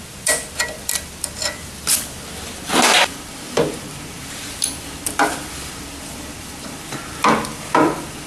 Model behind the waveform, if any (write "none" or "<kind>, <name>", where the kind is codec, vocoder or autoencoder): vocoder, BigVGAN v2